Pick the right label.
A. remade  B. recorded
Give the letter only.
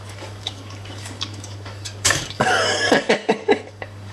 A